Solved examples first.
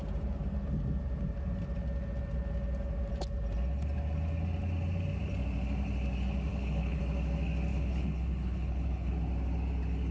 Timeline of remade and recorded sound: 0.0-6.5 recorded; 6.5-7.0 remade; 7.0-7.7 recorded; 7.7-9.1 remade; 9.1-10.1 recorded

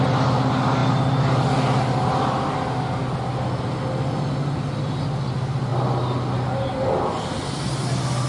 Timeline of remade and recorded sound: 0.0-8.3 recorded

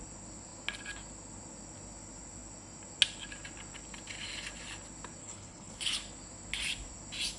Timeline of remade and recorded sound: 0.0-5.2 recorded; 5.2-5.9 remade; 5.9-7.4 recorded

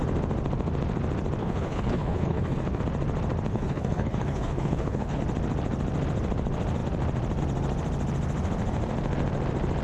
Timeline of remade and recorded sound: 0.0-1.4 recorded; 1.4-2.8 remade; 2.8-3.5 recorded; 3.5-5.2 remade; 5.2-9.8 recorded